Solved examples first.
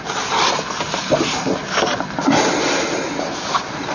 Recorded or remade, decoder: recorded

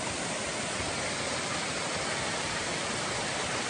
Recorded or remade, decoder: recorded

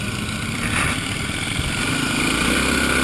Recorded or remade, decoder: recorded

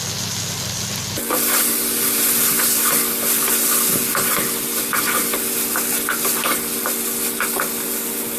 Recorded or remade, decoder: recorded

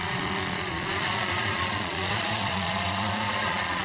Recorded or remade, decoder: remade, vocoder, Vocos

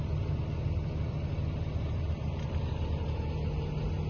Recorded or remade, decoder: recorded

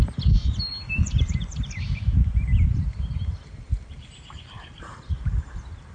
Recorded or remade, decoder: remade, vocoder, BigVGAN v2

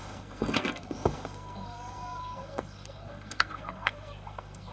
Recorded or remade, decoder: remade, codec, SNAC